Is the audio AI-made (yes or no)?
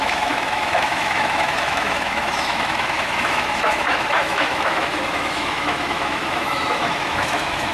yes